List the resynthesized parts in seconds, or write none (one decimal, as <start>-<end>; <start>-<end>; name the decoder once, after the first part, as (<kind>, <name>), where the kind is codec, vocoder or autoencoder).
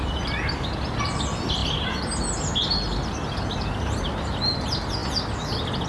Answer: none